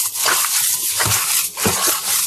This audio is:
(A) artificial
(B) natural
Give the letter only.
B